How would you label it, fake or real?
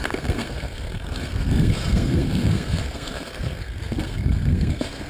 fake